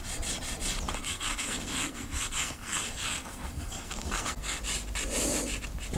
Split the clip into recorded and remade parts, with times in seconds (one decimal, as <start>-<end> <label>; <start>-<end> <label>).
0.0-1.0 recorded; 1.0-4.6 remade; 4.6-6.0 recorded

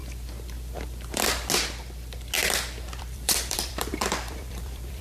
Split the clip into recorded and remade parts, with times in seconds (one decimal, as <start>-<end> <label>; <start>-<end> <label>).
0.0-3.0 recorded; 3.0-5.0 remade